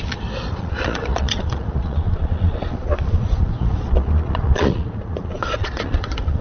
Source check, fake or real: fake